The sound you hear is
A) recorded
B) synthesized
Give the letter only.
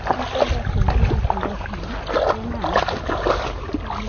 A